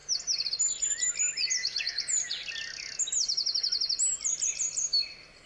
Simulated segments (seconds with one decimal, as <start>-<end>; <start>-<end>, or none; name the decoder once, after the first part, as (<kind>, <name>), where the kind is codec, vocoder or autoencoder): none